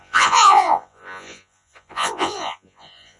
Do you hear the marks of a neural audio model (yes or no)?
yes